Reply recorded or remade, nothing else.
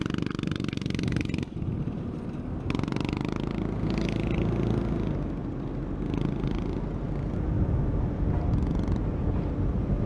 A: recorded